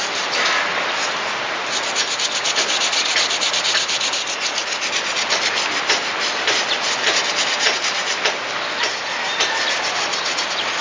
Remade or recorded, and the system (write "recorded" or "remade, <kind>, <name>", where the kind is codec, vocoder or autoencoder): recorded